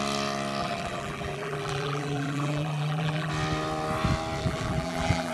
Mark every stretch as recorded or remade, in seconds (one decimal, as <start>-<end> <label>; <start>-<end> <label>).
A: 0.0-0.6 recorded; 0.6-3.3 remade; 3.3-4.4 recorded; 4.4-5.3 remade